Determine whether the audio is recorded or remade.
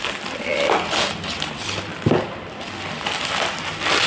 recorded